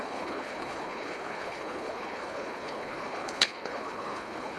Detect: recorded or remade remade